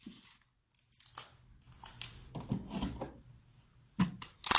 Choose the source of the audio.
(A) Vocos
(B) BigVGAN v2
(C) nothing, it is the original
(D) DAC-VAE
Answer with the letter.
C